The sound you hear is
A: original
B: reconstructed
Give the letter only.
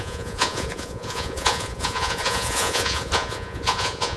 B